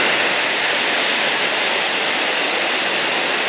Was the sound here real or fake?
real